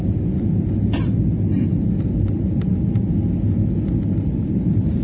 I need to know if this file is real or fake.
real